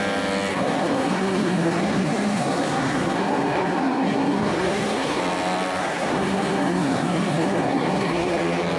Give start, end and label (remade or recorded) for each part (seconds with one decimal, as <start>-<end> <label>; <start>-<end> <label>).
0.0-0.5 recorded; 0.5-5.2 remade; 5.2-5.8 recorded; 5.8-8.4 remade; 8.4-8.8 recorded